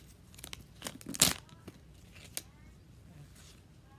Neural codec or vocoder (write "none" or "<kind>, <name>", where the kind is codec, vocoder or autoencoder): none